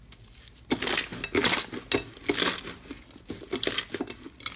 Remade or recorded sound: recorded